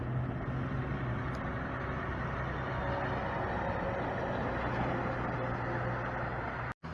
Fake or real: real